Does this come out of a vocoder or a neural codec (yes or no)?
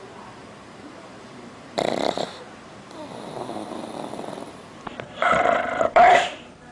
yes